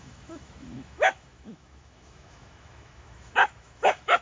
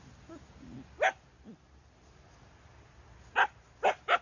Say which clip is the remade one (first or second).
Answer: first